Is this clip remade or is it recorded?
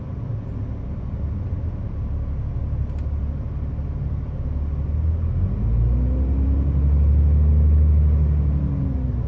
recorded